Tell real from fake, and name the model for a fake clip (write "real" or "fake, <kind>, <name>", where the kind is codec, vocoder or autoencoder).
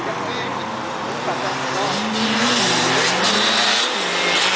real